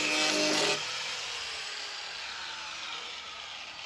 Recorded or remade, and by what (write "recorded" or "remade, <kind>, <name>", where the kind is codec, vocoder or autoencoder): recorded